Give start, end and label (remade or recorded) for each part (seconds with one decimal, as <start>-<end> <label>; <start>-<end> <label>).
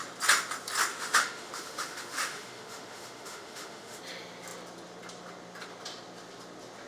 0.0-0.9 recorded; 0.9-4.0 remade; 4.0-6.9 recorded